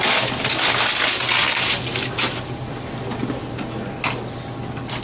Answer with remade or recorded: recorded